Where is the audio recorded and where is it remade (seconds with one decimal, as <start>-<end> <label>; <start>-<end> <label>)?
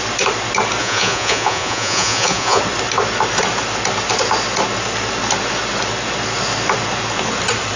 0.0-0.8 recorded; 0.8-2.6 remade; 2.6-7.8 recorded